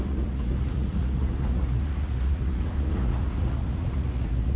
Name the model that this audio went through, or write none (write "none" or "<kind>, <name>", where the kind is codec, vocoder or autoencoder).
vocoder, Vocos